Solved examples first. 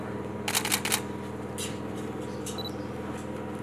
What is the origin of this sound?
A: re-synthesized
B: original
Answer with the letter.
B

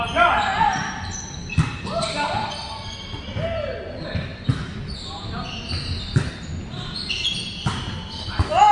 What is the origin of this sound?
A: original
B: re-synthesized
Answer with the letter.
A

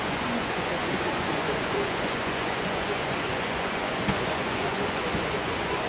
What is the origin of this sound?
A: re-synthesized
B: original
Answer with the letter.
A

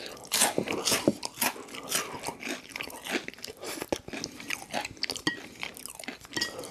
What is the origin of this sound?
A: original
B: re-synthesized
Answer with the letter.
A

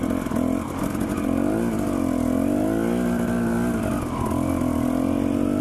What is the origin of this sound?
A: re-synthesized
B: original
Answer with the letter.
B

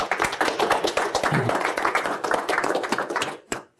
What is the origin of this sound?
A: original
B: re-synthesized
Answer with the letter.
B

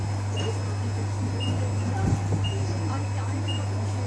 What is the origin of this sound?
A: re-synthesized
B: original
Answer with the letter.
B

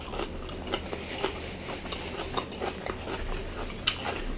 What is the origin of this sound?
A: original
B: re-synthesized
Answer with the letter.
A